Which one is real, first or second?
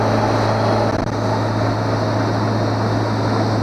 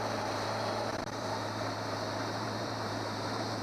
first